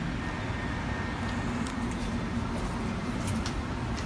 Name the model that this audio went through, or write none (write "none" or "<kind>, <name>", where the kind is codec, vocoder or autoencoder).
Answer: none